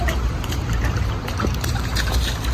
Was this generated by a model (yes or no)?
yes